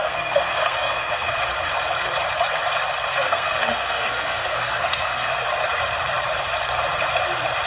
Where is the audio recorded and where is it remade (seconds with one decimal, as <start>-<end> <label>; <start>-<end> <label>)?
0.0-1.4 remade; 1.4-3.1 recorded; 3.1-5.3 remade; 5.3-7.7 recorded